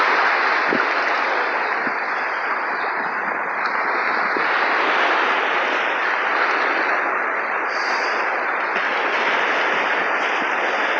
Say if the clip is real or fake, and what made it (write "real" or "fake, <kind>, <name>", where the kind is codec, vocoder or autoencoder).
real